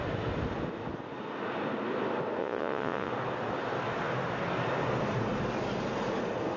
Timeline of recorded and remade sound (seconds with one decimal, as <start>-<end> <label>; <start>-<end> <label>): 0.0-2.4 recorded; 2.4-3.1 remade; 3.1-6.6 recorded